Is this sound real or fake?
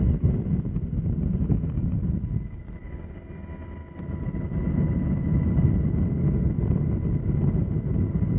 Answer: real